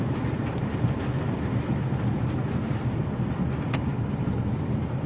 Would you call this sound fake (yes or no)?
yes